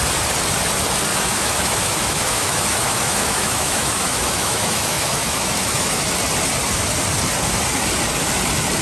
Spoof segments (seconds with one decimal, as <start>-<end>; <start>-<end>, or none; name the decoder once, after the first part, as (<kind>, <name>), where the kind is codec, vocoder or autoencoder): 1.1-6.1 (autoencoder, DAC-VAE)